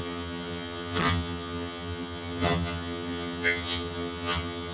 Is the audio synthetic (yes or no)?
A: yes